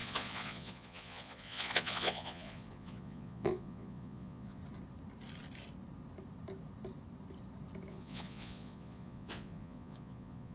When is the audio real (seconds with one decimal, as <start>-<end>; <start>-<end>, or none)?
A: 4.6-7.9